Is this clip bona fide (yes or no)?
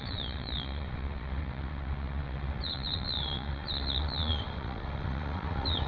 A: no